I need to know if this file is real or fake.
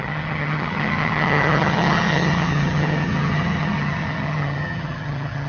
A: fake